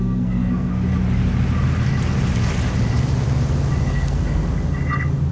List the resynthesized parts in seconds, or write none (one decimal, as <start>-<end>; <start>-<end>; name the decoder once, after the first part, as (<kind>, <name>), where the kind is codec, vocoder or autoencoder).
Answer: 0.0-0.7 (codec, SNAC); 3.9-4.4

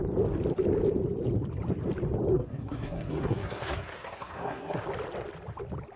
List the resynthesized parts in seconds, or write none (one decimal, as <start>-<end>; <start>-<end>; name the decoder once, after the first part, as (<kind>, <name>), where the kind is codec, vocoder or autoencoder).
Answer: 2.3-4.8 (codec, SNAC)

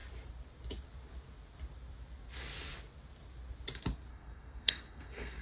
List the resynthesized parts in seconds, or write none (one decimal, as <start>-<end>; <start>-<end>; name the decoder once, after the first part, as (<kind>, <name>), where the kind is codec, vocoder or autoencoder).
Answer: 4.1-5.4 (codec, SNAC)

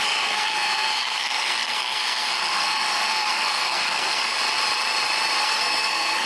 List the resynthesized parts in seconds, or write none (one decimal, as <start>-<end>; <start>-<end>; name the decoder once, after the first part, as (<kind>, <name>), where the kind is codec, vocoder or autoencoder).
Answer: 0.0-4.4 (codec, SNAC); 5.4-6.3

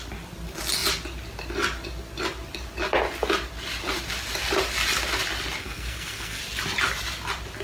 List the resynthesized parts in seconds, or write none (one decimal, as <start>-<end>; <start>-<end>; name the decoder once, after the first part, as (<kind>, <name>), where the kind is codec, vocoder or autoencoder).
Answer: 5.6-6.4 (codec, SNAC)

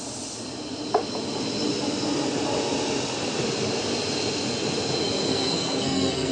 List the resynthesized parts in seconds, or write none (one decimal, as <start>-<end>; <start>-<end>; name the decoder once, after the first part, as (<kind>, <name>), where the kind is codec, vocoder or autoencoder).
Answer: 5.3-6.3 (codec, SNAC)